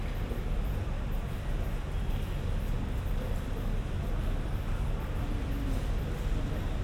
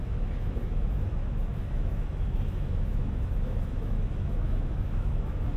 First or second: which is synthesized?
second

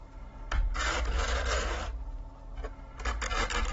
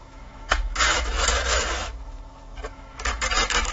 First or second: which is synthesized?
second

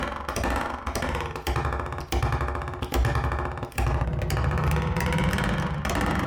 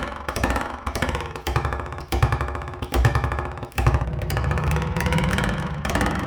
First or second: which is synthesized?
second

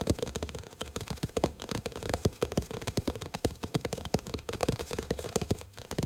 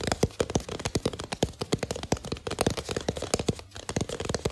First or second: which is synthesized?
first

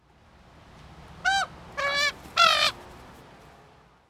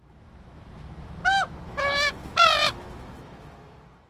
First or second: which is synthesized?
second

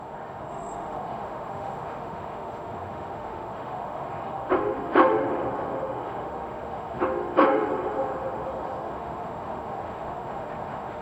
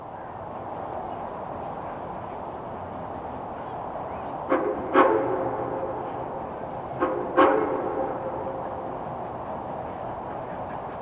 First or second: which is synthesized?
first